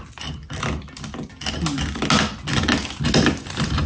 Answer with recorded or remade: recorded